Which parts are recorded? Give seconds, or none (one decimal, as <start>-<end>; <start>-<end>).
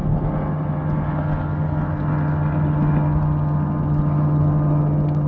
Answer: 0.0-5.3